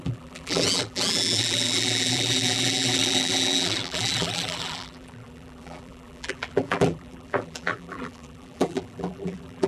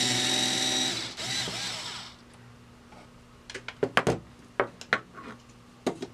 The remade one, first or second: first